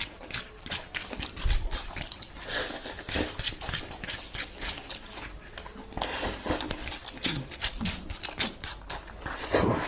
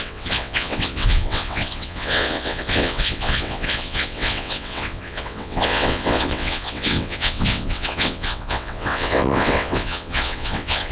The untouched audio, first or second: first